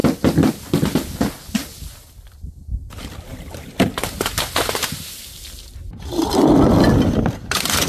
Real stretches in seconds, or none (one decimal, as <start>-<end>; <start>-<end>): 0.0-7.9